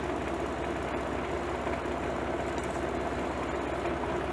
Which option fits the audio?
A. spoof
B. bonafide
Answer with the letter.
B